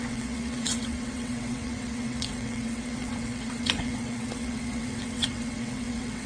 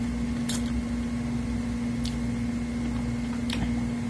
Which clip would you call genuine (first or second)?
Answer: second